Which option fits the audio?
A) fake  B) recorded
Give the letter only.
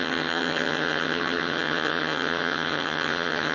A